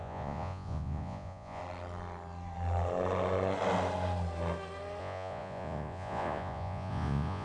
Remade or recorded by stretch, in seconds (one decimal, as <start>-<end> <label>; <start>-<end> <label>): 0.0-1.6 remade; 1.6-5.0 recorded; 5.0-7.4 remade